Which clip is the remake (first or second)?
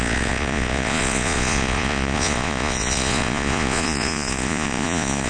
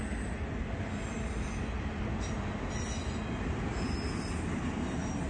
first